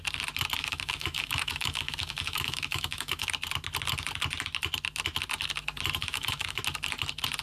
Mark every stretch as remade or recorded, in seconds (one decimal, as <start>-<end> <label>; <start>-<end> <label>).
0.0-0.6 recorded; 0.6-3.3 remade; 3.3-6.0 recorded; 6.0-6.6 remade; 6.6-7.4 recorded